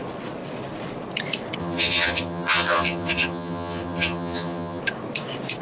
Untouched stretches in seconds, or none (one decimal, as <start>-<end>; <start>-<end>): 0.0-1.6; 4.8-5.6